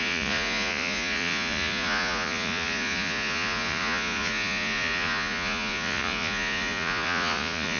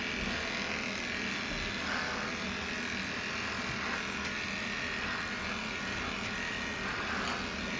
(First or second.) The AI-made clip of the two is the first